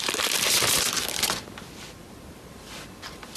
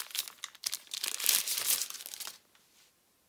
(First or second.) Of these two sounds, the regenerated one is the first